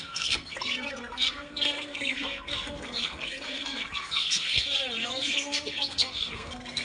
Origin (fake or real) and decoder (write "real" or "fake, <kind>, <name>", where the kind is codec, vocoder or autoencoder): fake, codec, SNAC